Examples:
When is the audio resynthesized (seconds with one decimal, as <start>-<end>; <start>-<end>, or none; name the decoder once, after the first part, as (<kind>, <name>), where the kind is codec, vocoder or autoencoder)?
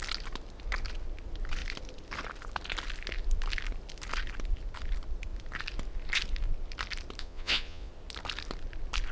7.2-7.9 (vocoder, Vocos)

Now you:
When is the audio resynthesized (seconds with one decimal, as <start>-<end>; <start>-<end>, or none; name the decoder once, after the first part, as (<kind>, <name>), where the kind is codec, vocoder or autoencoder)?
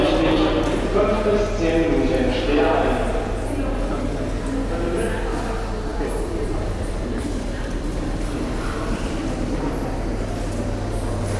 5.9-9.2 (vocoder, BigVGAN v2)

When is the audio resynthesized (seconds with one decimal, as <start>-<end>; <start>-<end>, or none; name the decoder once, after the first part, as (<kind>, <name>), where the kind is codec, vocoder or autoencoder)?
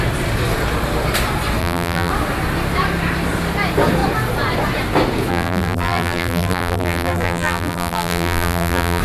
1.6-2.1 (vocoder, BigVGAN v2); 5.3-9.0